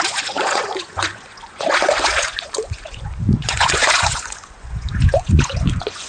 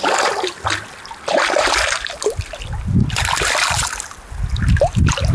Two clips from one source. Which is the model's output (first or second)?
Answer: first